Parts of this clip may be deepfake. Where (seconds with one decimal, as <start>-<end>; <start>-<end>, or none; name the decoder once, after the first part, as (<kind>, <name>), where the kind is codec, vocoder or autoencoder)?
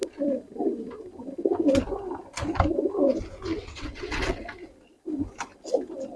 3.6-4.4 (vocoder, WaveNeXt)